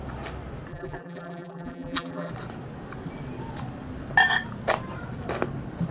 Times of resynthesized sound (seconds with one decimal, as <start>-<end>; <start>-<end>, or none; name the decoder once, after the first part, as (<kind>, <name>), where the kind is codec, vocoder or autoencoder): 0.7-2.3 (vocoder, BigVGAN v2)